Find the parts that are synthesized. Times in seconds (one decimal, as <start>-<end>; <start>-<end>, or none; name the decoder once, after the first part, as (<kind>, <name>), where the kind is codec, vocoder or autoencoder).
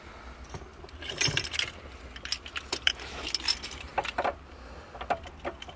0.7-3.1 (vocoder, BigVGAN v2); 3.9-5.8